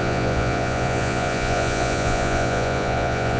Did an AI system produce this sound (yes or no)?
yes